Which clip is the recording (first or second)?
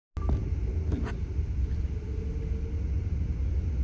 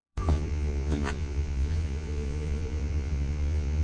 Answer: first